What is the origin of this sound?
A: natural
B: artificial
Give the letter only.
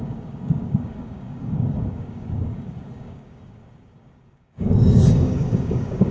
B